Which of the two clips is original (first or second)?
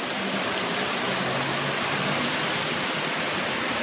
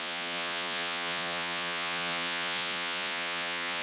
first